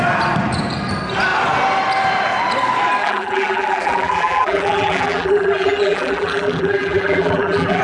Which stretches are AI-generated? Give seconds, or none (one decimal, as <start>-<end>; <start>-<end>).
3.0-7.8